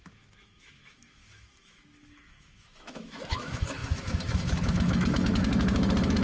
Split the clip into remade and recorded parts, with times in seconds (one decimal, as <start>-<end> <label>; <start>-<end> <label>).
0.0-6.2 remade